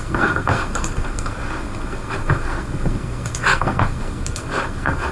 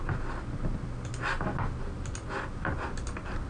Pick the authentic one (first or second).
second